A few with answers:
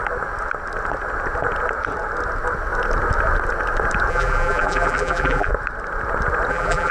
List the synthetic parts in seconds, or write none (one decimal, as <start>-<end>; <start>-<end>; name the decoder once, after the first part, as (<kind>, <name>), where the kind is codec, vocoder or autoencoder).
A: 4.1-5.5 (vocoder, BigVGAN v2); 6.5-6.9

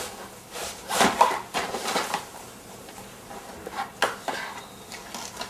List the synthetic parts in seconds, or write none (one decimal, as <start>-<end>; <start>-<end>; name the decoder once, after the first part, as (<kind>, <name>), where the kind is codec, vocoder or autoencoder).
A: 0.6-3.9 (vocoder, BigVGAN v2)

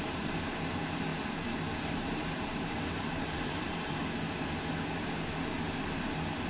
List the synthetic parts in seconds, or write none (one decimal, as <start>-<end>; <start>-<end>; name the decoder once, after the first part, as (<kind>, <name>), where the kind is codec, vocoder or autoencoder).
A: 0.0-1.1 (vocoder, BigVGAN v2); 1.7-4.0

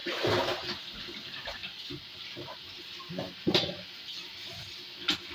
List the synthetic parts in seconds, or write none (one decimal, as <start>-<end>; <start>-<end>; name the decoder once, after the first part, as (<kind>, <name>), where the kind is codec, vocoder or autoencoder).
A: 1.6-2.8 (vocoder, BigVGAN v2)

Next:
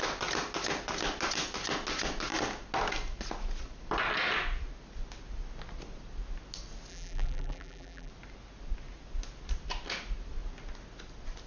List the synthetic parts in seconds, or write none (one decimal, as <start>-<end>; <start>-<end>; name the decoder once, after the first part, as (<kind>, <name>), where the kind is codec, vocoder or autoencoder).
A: 6.9-8.1 (vocoder, BigVGAN v2)

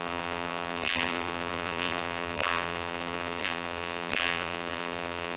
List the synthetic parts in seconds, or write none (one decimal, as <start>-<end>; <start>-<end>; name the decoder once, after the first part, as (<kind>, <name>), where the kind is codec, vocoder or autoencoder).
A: 0.0-5.4 (vocoder, BigVGAN v2)

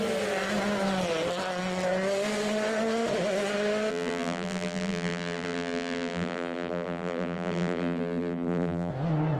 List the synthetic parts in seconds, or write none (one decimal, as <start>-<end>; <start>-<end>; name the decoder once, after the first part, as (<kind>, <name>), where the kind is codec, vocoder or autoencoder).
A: 3.9-8.9 (vocoder, BigVGAN v2)